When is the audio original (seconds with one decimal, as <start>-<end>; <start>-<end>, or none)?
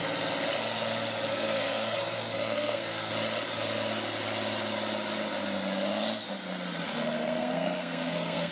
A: 0.0-1.3; 3.1-6.9